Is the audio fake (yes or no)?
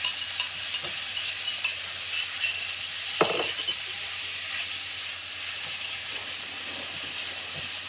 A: no